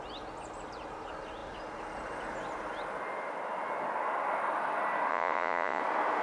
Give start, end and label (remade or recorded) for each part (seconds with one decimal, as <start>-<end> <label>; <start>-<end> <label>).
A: 0.0-5.1 recorded; 5.1-5.8 remade; 5.8-6.2 recorded